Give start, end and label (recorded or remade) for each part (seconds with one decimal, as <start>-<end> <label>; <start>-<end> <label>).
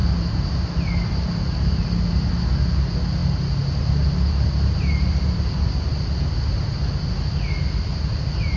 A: 0.0-8.6 recorded